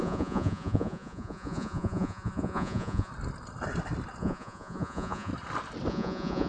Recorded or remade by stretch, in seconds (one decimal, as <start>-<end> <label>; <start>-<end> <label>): 0.0-3.1 remade; 3.1-4.2 recorded; 4.2-5.3 remade; 5.3-5.9 recorded; 5.9-6.5 remade